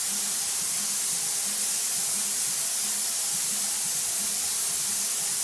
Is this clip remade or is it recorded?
recorded